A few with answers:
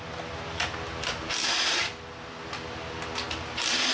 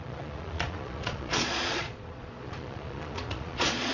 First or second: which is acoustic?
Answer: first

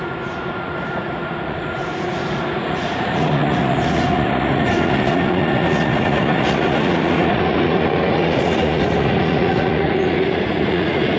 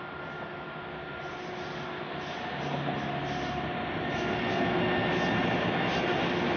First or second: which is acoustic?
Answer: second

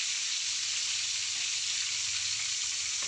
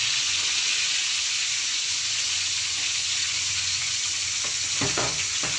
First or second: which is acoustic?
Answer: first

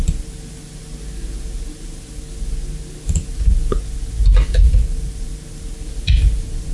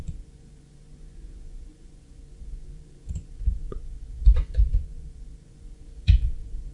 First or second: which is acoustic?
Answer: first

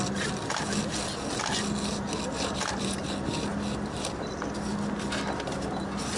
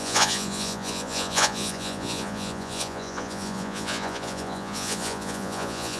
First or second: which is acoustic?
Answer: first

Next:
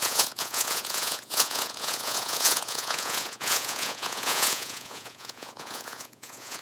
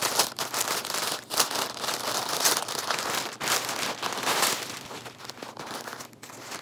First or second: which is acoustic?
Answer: second